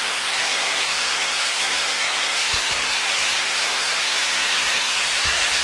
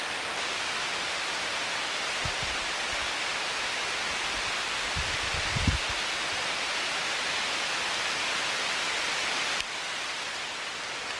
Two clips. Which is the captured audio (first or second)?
second